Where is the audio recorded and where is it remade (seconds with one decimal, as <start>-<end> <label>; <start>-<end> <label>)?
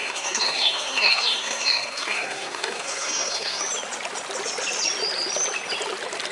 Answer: 0.0-3.6 remade; 3.6-6.3 recorded